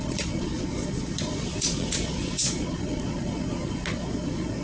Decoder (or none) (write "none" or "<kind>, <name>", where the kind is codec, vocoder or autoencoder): vocoder, Vocos